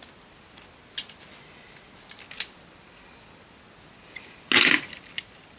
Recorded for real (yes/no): yes